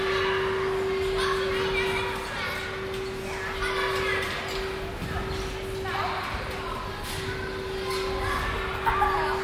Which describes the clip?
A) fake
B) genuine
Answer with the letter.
B